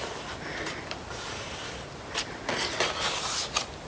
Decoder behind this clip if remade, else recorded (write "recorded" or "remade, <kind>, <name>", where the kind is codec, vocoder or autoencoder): recorded